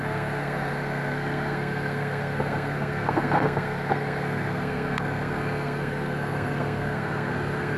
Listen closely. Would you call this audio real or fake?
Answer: fake